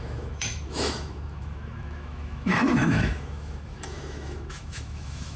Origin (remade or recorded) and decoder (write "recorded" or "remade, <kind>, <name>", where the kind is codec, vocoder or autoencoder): remade, autoencoder, DAC-VAE